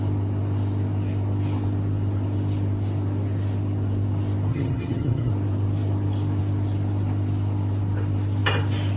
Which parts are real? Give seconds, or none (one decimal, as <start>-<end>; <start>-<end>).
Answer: 0.0-4.5; 5.3-9.0